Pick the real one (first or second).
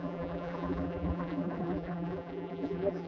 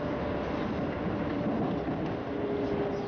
second